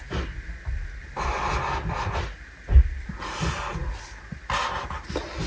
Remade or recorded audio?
recorded